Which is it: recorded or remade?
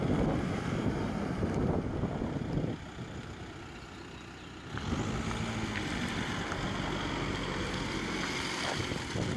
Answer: recorded